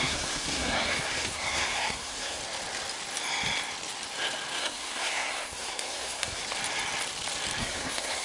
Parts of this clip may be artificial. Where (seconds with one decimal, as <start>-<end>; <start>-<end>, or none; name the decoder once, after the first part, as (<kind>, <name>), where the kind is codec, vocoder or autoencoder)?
0.0-2.4 (codec, SNAC); 4.6-6.4; 7.6-8.2